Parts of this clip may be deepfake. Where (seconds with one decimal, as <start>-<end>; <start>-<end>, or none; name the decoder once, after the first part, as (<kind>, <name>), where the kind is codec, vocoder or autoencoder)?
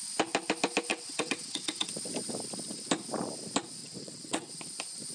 0.9-1.9 (vocoder, WaveNeXt); 3.8-4.5